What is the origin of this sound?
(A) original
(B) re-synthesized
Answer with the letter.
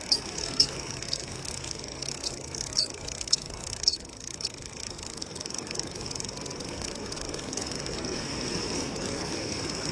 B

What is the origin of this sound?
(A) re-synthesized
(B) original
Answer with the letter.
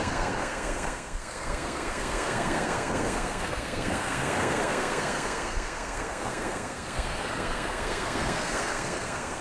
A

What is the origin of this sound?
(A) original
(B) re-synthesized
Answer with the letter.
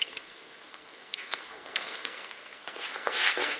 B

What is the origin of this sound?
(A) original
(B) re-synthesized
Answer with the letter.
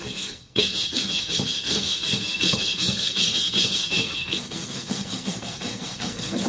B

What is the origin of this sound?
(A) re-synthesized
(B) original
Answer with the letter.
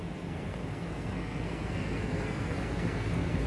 A